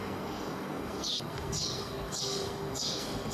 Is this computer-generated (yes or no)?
yes